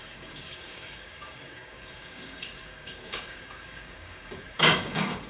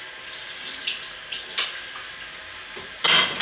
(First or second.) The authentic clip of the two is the second